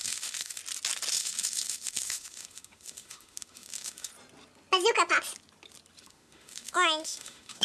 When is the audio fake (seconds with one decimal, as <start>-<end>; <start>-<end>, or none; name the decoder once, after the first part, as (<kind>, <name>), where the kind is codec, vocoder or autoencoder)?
0.0-0.6 (autoencoder, DAC-VAE); 1.1-4.1; 6.0-7.6